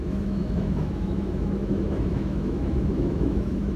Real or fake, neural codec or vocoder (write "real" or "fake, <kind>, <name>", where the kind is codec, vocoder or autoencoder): fake, autoencoder, DAC-VAE